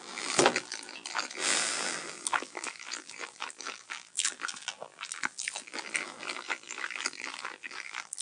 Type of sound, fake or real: fake